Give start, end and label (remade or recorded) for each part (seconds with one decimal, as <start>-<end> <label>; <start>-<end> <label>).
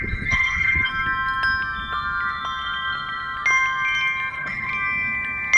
0.0-0.9 remade; 0.9-4.3 recorded; 4.3-4.7 remade; 4.7-5.6 recorded